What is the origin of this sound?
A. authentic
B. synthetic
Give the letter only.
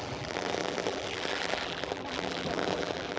B